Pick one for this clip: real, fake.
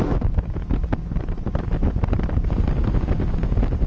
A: real